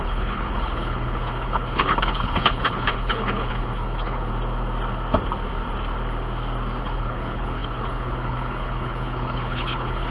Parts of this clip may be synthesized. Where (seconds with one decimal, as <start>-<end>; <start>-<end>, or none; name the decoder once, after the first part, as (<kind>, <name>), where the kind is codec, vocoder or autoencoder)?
0.0-4.3 (codec, HILCodec); 6.8-10.1